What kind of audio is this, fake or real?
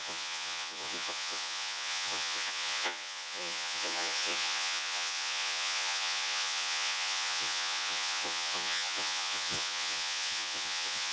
fake